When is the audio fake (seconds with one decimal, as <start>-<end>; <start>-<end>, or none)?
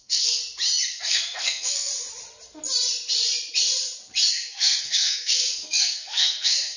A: 0.0-0.4; 0.9-1.9; 4.3-6.8